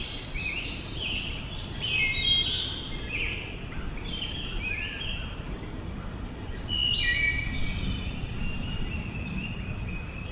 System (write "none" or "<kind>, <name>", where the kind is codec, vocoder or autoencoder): none